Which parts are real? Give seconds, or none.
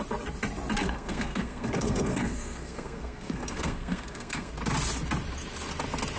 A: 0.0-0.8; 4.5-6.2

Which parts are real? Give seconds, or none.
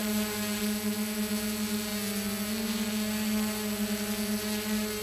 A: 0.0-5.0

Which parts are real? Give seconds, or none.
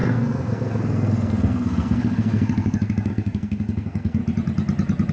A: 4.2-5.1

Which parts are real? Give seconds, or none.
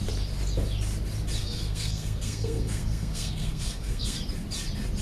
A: 0.0-1.4; 4.2-5.0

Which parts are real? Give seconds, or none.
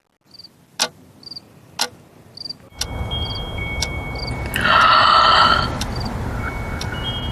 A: 0.0-7.3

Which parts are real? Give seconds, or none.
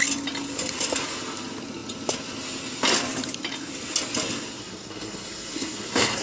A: 0.0-4.6